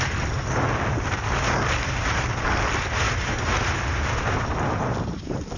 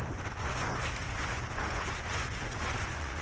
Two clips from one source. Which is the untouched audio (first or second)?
first